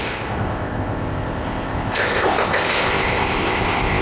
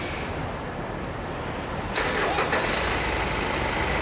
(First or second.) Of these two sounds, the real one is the second